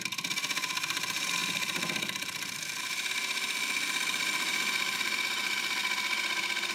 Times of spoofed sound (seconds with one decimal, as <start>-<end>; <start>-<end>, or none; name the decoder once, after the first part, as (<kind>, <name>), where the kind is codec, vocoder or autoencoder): 0.0-5.8 (vocoder, BigVGAN v2)